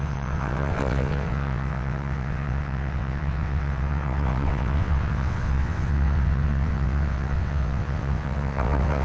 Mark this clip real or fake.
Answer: fake